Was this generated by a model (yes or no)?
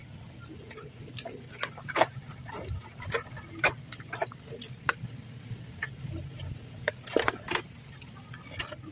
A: no